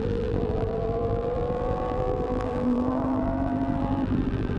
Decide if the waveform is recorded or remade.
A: remade